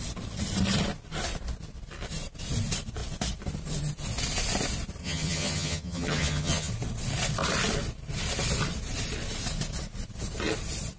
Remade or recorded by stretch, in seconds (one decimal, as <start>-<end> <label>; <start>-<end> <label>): 0.0-5.0 recorded; 5.0-6.7 remade; 6.7-11.0 recorded